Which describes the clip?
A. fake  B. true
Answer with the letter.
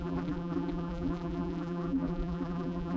A